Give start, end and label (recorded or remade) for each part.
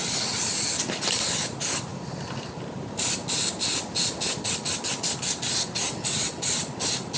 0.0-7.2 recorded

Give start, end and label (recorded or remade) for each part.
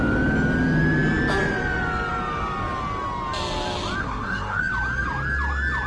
0.0-4.0 recorded; 4.0-4.6 remade; 4.6-5.9 recorded